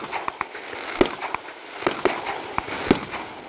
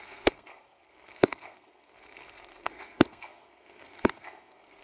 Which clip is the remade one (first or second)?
second